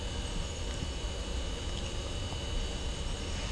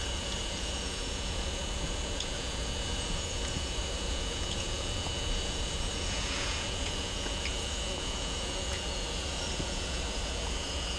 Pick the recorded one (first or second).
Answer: first